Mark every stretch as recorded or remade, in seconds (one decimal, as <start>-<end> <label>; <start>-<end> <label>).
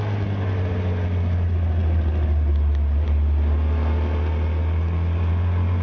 0.0-5.8 recorded